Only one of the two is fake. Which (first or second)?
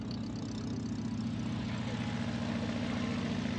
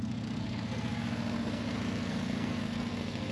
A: second